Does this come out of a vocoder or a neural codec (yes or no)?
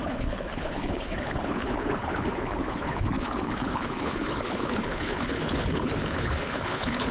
yes